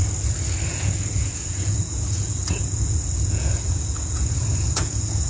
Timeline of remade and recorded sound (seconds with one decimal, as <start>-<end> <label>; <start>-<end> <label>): 0.0-0.7 recorded; 0.7-5.3 remade